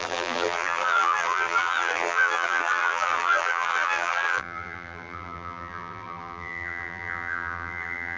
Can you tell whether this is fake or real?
fake